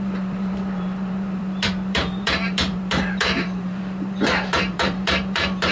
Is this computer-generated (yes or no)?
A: yes